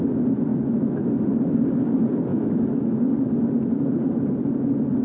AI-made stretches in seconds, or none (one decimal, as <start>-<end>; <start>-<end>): 2.3-3.0